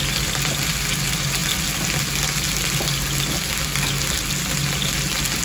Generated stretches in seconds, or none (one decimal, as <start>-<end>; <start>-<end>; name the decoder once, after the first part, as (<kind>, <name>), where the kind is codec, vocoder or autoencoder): none